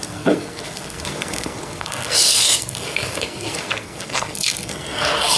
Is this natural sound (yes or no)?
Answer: no